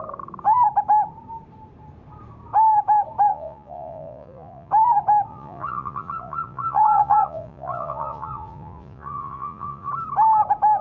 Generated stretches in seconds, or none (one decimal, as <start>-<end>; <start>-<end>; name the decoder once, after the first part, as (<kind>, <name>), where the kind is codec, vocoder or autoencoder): 3.3-4.7 (vocoder, Vocos); 5.3-9.9